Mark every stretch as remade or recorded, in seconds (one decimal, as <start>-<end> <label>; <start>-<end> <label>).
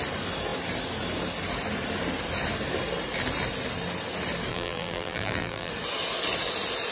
0.0-4.5 recorded; 4.5-5.7 remade; 5.7-6.9 recorded